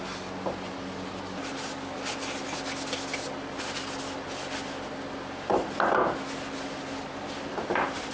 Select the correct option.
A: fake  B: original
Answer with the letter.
B